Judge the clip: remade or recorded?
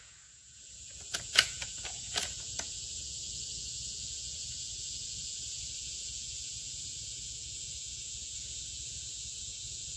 remade